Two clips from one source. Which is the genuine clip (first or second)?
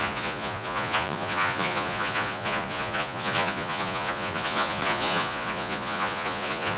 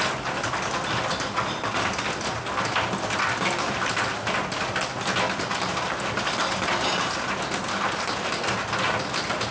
second